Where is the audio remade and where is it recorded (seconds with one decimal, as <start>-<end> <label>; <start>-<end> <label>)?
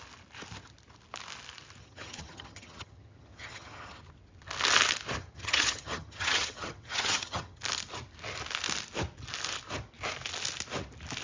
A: 0.0-1.8 recorded; 1.8-4.0 remade; 4.0-5.2 recorded; 5.2-7.6 remade; 7.6-11.2 recorded